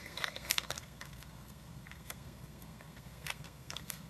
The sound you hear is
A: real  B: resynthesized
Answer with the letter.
B